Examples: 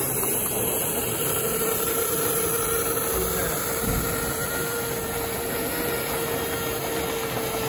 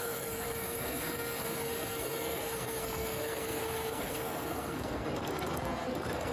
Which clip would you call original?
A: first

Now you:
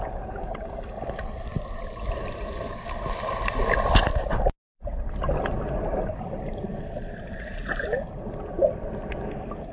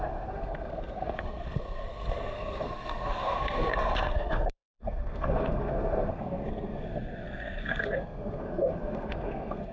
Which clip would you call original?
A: first